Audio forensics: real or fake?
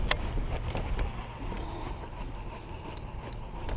real